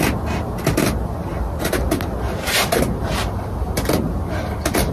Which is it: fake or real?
real